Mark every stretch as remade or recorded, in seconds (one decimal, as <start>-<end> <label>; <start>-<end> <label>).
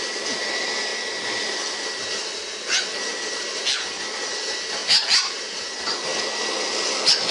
0.0-0.9 remade; 0.9-4.3 recorded; 4.3-4.8 remade; 4.8-5.3 recorded; 5.3-7.3 remade